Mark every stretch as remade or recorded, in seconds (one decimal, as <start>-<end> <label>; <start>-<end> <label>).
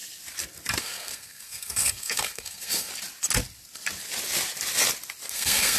0.0-0.8 recorded; 0.8-2.9 remade; 2.9-5.3 recorded; 5.3-5.8 remade